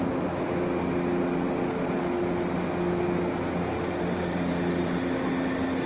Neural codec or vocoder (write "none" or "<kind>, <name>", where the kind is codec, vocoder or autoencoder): none